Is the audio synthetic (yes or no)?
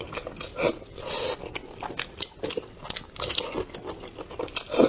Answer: no